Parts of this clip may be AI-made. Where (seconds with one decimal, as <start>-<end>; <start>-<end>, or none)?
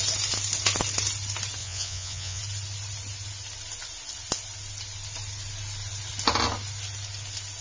1.6-2.4